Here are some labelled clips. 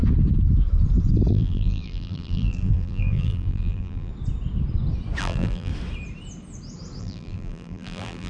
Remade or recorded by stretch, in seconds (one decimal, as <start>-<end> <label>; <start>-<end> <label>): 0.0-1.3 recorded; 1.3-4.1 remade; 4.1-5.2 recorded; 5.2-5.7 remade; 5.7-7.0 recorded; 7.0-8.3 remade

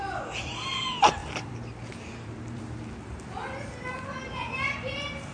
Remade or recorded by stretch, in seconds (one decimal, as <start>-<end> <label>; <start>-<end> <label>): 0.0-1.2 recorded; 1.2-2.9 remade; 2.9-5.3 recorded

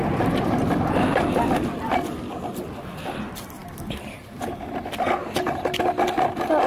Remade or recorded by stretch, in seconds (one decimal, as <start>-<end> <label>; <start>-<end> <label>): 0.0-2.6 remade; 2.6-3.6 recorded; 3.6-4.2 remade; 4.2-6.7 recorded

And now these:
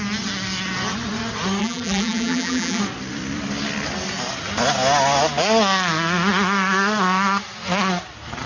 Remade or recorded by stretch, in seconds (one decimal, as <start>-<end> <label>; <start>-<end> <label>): 0.0-1.6 recorded; 1.6-2.8 remade; 2.8-8.5 recorded